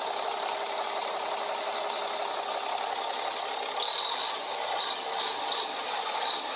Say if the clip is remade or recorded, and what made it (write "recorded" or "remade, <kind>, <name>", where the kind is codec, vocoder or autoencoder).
recorded